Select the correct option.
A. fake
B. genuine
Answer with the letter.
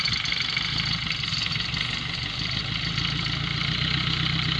B